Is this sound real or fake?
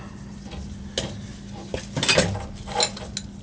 real